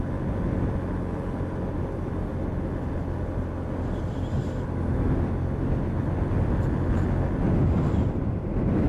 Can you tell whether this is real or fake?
real